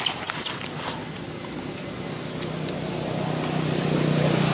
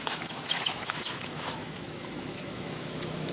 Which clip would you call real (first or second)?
first